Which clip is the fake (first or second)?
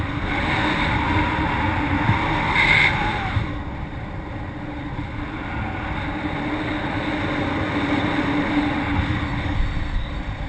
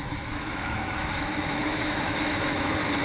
second